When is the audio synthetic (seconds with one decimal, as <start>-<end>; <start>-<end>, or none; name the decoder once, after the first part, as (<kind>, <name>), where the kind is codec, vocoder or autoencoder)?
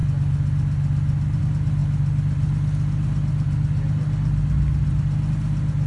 none